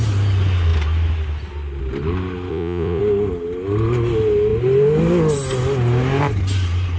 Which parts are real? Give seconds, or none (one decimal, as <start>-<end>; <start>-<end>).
0.0-2.5; 3.0-7.0